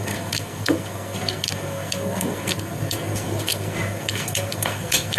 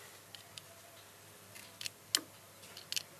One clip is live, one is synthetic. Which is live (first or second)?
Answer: second